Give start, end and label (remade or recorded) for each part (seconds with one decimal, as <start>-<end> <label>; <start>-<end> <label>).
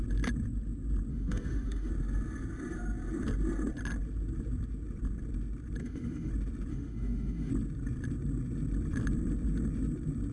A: 0.0-1.1 recorded; 1.1-1.9 remade; 1.9-5.8 recorded; 5.8-6.3 remade; 6.3-6.7 recorded; 6.7-7.5 remade; 7.5-10.3 recorded